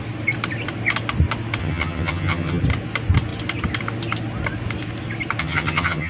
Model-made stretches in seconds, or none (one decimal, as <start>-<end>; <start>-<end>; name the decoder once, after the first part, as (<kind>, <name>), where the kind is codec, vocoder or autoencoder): 1.6-2.6 (vocoder, HiFi-GAN); 5.4-6.1